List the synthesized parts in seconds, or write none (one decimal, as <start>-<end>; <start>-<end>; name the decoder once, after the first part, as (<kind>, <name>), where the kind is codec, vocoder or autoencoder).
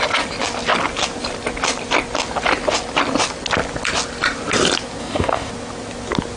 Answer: 5.0-5.5 (codec, DAC)